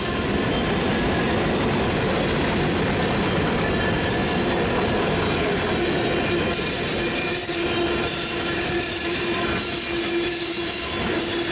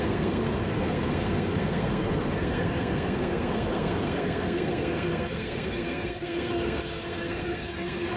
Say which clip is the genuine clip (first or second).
first